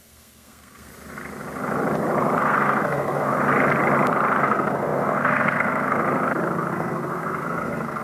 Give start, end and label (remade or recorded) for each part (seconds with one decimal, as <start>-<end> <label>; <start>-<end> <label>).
0.0-0.9 remade; 0.9-2.4 recorded; 2.4-3.3 remade; 3.3-4.4 recorded; 4.4-6.0 remade; 6.0-6.7 recorded; 6.7-8.0 remade